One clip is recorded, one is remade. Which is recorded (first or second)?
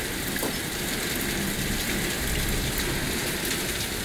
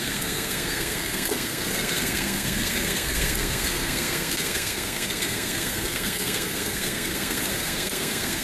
first